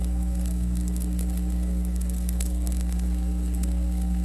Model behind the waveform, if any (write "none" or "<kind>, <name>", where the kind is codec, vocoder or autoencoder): codec, SNAC